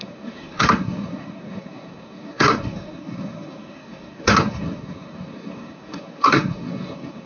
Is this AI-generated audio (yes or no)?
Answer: yes